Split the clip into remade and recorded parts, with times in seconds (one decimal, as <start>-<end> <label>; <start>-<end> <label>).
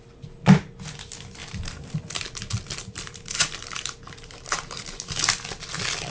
0.0-1.4 recorded; 1.4-5.1 remade; 5.1-6.1 recorded